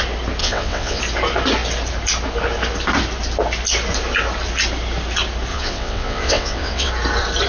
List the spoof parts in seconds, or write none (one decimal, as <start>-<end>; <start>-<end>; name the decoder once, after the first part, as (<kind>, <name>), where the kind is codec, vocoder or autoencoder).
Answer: 0.4-1.0 (vocoder, WaveNeXt); 5.5-6.9